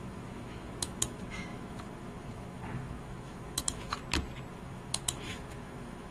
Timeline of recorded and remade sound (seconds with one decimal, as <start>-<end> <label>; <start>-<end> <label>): 0.0-4.0 remade; 4.0-4.5 recorded; 4.5-6.1 remade